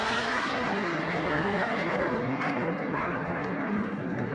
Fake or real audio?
fake